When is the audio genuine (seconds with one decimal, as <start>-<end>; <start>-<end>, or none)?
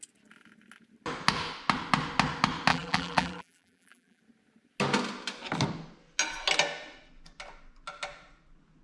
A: 0.0-2.7; 4.2-8.8